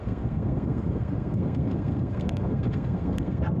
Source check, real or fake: fake